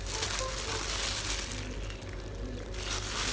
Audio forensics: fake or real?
real